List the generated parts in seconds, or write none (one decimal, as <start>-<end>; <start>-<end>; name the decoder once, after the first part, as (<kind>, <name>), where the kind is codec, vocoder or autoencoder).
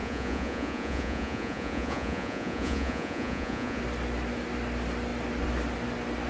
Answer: 0.0-3.8 (vocoder, Vocos)